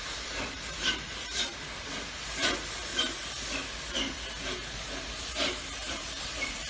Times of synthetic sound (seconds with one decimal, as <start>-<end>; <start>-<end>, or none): 0.0-2.9; 4.7-6.7